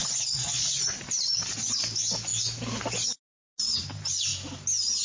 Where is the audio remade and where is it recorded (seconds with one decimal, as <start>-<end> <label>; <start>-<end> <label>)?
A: 0.0-0.7 remade; 0.7-5.0 recorded